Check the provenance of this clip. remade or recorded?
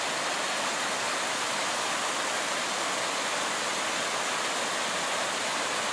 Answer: recorded